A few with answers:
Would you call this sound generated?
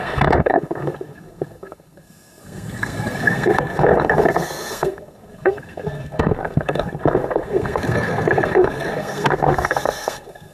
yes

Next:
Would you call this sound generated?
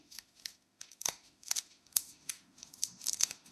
yes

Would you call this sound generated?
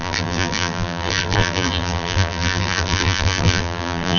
yes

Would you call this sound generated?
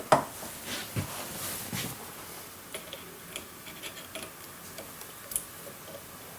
no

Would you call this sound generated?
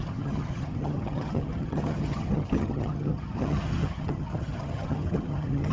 yes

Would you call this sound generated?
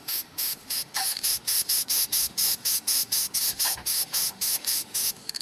yes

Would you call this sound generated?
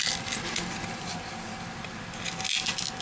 no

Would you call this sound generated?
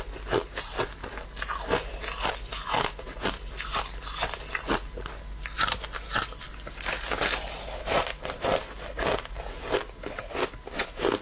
no